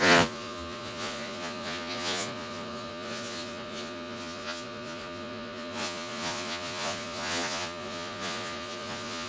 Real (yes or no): no